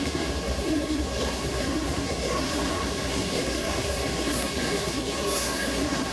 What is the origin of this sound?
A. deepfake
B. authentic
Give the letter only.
A